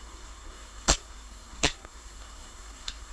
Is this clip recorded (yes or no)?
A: no